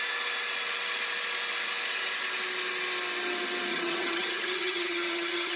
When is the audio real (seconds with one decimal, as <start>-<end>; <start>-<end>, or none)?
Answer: 0.0-3.7